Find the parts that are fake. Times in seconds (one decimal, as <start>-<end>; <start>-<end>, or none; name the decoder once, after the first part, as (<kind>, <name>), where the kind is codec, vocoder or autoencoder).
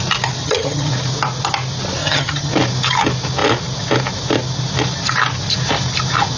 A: 0.4-0.9 (vocoder, HiFi-GAN); 2.0-2.5